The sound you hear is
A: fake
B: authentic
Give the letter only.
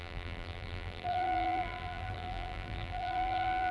A